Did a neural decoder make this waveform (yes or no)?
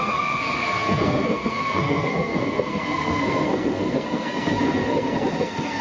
yes